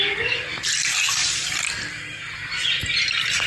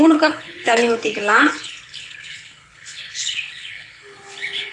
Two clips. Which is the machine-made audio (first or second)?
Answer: second